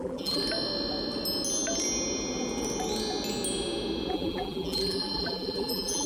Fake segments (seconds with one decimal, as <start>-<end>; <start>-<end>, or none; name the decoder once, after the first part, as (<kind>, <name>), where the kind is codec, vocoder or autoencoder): 0.0-0.4 (vocoder, BigVGAN v2); 4.1-6.1